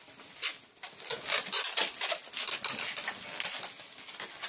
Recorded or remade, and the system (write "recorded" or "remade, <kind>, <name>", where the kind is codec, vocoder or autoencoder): recorded